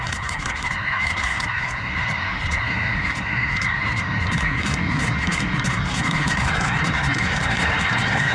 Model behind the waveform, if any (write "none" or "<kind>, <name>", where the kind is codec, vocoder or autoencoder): codec, SNAC